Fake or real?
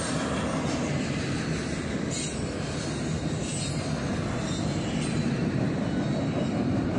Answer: real